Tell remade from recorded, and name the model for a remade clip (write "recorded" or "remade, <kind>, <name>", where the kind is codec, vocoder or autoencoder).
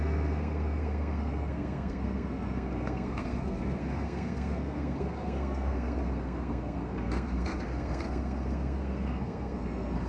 remade, codec, SNAC